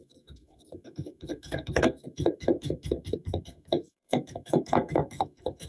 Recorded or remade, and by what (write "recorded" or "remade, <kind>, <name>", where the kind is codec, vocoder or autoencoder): remade, codec, SNAC